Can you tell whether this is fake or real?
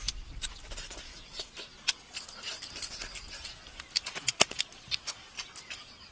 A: real